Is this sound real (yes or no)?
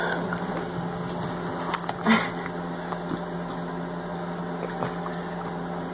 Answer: yes